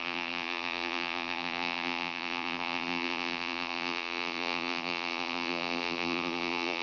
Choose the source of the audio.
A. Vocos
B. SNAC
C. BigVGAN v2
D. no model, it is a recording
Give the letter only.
C